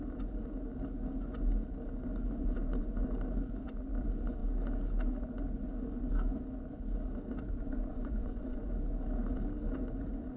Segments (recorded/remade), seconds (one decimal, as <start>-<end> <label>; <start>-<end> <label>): 0.0-7.9 recorded; 7.9-8.7 remade; 8.7-10.4 recorded